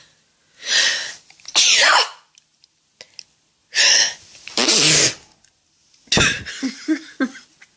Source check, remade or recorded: recorded